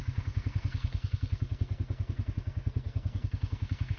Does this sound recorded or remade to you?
remade